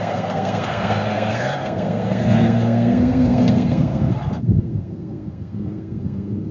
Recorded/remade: remade